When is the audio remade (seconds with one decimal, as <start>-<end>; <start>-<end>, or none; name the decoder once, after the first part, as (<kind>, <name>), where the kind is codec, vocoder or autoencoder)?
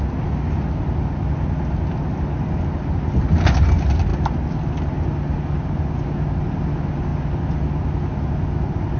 none